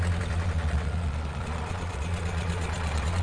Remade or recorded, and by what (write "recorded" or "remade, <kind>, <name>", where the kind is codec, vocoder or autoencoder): remade, vocoder, Vocos